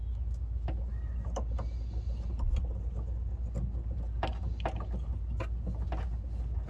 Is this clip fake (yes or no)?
no